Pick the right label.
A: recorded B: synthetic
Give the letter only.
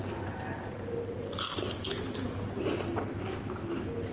A